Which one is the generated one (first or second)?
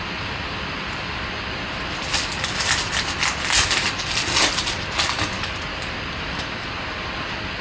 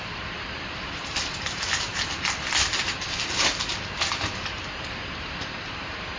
second